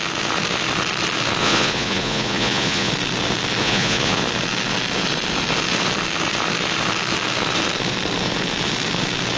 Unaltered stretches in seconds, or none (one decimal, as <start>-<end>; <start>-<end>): 0.0-1.4; 2.9-3.6; 4.2-9.4